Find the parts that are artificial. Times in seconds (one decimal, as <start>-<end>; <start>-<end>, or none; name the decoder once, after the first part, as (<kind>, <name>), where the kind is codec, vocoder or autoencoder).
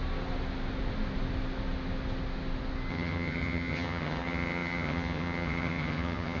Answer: 2.9-6.4 (vocoder, HiFi-GAN)